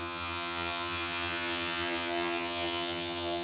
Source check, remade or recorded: remade